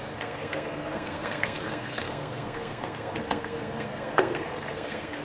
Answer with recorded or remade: remade